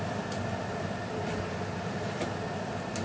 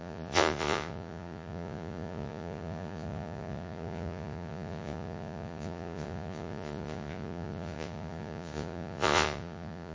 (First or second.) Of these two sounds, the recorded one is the first